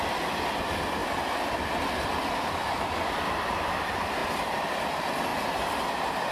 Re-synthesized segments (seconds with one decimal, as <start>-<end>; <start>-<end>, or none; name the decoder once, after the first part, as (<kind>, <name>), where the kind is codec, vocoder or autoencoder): 4.2-4.7 (vocoder, BigVGAN v2); 5.3-6.3